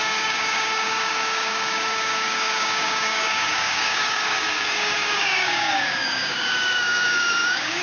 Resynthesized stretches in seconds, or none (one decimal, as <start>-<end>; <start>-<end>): 0.0-7.8